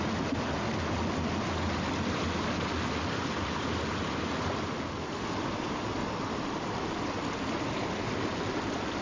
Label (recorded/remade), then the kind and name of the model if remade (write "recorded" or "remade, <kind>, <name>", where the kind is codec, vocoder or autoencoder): recorded